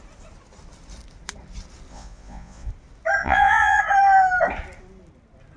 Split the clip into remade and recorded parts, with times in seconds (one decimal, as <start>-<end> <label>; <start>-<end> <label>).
0.0-1.9 recorded; 1.9-2.7 remade; 2.7-3.2 recorded; 3.2-3.8 remade; 3.8-5.6 recorded